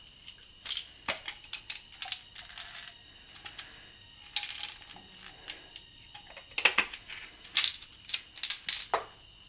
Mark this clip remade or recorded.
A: recorded